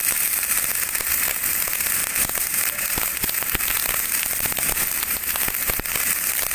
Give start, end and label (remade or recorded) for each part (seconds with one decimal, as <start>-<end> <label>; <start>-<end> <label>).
0.0-6.5 recorded